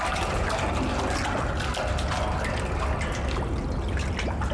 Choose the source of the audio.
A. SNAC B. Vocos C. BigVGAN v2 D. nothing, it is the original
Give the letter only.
D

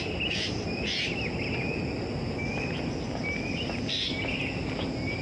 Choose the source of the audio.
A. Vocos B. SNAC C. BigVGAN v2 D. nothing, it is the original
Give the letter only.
D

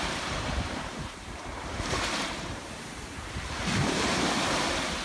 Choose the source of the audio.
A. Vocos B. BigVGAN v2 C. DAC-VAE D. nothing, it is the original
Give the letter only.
B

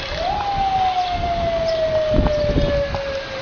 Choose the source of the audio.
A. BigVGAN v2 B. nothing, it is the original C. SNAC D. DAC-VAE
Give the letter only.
B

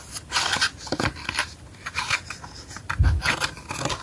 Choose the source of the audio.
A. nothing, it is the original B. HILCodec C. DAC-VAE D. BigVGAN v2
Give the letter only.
A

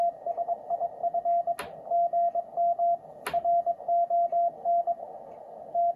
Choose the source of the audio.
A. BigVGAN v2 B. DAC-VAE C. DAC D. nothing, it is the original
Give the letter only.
D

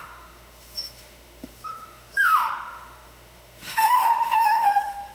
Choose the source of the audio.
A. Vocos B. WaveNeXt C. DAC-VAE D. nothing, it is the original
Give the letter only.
C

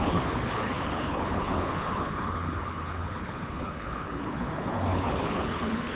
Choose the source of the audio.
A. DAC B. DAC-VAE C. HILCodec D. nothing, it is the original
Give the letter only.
C